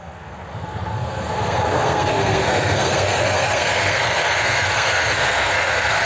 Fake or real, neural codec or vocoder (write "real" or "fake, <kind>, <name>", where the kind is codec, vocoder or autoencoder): fake, codec, SNAC